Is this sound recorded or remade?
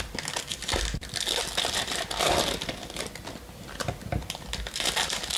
recorded